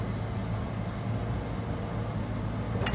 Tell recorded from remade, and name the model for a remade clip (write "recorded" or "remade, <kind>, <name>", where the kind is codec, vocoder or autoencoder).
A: recorded